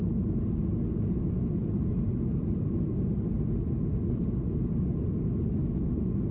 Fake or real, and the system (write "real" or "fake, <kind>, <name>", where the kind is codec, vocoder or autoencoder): real